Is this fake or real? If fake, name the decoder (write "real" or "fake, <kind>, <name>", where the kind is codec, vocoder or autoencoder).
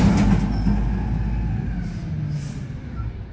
real